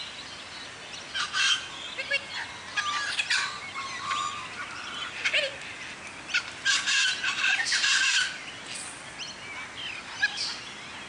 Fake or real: real